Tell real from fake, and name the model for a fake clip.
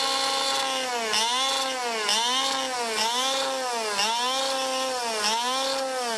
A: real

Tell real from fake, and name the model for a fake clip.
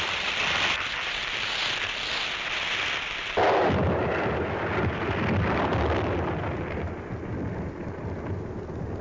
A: real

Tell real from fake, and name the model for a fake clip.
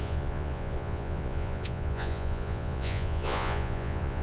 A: fake, vocoder, Vocos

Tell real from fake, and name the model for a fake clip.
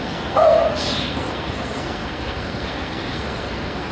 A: fake, codec, SNAC